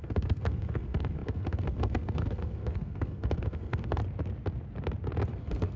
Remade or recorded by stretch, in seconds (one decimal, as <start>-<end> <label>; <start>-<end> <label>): 0.0-4.0 remade; 4.0-5.3 recorded; 5.3-5.8 remade